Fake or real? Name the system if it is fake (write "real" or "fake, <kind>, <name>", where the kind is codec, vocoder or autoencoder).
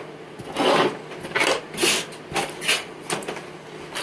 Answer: real